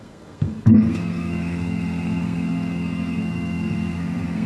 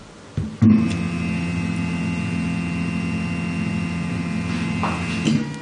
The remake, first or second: first